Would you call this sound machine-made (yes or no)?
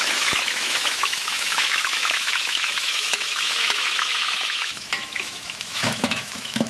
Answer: yes